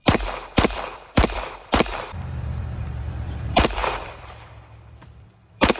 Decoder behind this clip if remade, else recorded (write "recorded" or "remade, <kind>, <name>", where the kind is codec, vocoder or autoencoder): remade, vocoder, BigVGAN v2